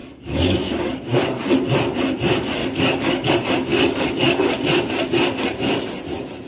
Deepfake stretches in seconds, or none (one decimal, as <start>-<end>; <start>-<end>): 0.0-1.4; 2.6-3.3; 3.7-4.5